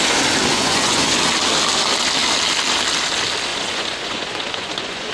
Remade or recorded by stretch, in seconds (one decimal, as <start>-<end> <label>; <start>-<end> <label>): 0.0-0.5 recorded; 0.5-1.2 remade; 1.2-3.5 recorded; 3.5-5.1 remade